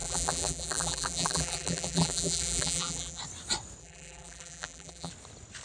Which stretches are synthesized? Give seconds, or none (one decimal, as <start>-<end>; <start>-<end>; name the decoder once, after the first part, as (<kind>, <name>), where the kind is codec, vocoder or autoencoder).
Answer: 0.0-3.2 (vocoder, BigVGAN v2); 3.8-5.1